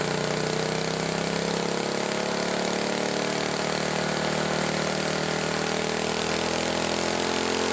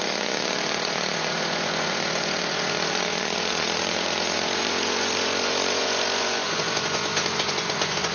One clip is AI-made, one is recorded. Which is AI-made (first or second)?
second